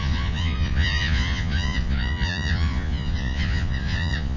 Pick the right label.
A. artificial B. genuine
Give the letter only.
A